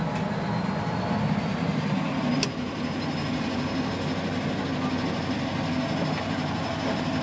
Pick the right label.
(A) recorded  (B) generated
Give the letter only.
A